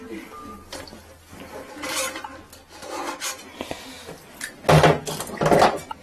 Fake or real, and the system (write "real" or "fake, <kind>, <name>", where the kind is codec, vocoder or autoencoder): real